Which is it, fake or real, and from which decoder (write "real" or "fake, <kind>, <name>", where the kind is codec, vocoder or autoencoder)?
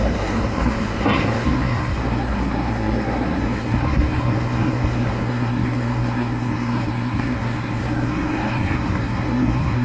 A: fake, codec, SNAC